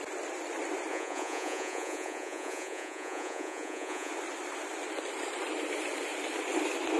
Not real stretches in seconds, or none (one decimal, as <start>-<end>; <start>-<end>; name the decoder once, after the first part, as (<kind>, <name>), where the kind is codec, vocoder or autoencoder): 0.9-4.1 (vocoder, Vocos)

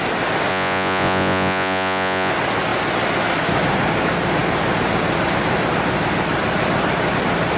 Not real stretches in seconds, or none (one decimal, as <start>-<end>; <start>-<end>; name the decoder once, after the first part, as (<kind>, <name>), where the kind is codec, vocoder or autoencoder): 0.5-2.3 (vocoder, Vocos)

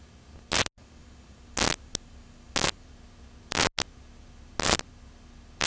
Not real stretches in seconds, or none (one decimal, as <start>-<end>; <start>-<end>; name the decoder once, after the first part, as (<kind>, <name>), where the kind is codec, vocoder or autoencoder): none

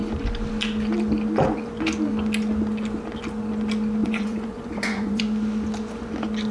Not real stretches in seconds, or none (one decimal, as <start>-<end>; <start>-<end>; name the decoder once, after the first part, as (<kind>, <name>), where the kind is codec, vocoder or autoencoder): 4.0-5.2 (vocoder, Vocos)

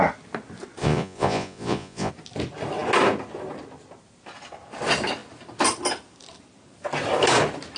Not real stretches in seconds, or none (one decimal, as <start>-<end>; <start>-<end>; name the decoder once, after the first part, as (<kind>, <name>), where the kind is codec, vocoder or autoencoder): 0.8-2.1 (vocoder, Vocos)

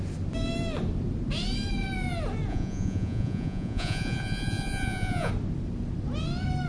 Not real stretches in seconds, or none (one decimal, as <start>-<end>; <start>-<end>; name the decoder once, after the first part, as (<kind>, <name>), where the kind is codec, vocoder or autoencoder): 2.5-5.3 (vocoder, Vocos)

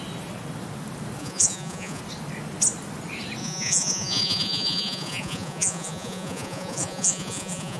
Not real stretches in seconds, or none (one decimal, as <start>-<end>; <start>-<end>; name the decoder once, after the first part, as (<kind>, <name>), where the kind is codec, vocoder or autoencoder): 1.2-2.0 (vocoder, Vocos); 3.4-7.8